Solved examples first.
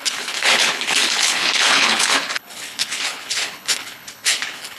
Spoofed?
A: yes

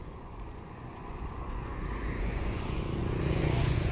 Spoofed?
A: yes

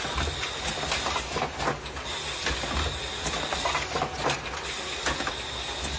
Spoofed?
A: no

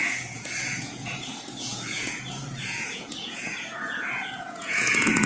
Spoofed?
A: yes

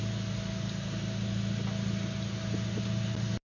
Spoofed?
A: no